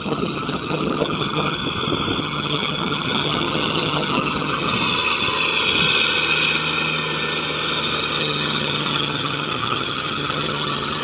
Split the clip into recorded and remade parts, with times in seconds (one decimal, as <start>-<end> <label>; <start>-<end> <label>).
0.0-1.6 remade; 1.6-2.2 recorded; 2.2-4.7 remade; 4.7-8.2 recorded; 8.2-11.0 remade

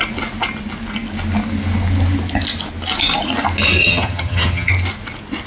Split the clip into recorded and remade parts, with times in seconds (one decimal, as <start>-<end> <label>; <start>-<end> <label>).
0.0-3.8 recorded; 3.8-4.7 remade; 4.7-5.5 recorded

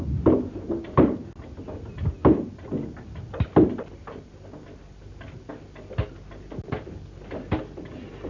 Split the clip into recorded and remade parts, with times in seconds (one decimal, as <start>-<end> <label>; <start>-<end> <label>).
0.0-8.3 recorded

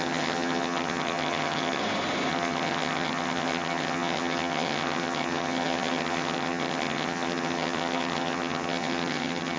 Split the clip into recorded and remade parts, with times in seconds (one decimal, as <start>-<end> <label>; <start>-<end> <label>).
0.0-1.8 remade; 1.8-2.3 recorded; 2.3-9.6 remade

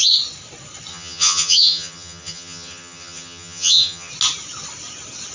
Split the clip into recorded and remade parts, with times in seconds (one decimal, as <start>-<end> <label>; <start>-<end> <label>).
0.0-0.9 recorded; 0.9-4.1 remade; 4.1-5.3 recorded

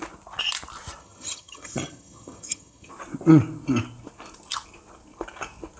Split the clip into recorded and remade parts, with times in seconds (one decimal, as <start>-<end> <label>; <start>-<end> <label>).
0.0-1.0 recorded; 1.0-2.9 remade; 2.9-5.8 recorded